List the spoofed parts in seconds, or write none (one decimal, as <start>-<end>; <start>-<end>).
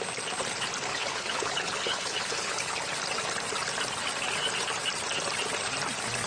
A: 0.9-2.7